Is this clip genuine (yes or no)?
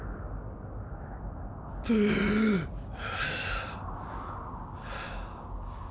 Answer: yes